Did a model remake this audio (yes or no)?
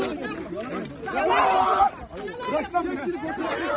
no